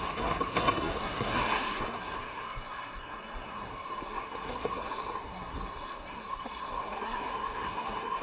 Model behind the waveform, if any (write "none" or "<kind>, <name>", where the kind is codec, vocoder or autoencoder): codec, SNAC